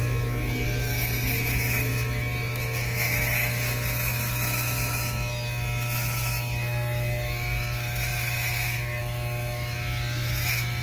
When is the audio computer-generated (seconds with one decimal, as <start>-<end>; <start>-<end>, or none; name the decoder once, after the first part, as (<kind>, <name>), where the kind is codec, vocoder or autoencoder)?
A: 0.0-10.8 (autoencoder, DAC-VAE)